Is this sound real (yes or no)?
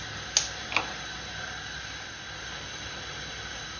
yes